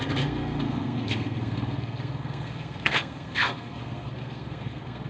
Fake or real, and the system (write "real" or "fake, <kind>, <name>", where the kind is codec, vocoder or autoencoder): fake, codec, SNAC